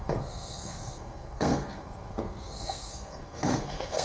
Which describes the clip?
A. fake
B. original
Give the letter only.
A